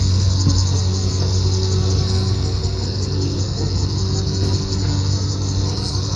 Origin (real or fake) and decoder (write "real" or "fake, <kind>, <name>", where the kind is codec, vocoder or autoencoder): fake, codec, SNAC